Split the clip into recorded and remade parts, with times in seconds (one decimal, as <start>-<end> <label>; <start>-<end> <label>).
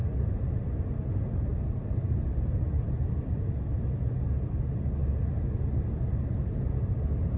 0.0-0.8 remade; 0.8-1.5 recorded; 1.5-3.2 remade; 3.2-7.4 recorded